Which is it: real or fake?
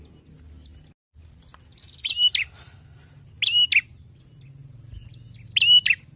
real